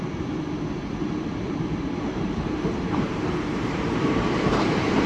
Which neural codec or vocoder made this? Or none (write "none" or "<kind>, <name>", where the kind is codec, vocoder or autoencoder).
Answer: vocoder, BigVGAN v2